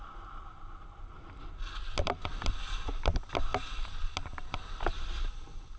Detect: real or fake real